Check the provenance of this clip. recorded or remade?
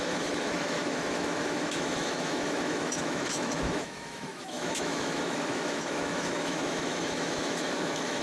remade